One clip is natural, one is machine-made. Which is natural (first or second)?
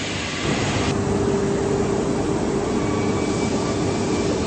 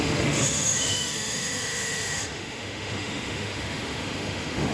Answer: first